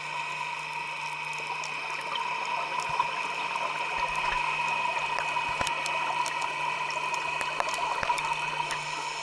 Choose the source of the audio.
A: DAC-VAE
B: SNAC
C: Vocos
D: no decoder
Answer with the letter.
D